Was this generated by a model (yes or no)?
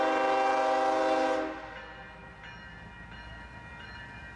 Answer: no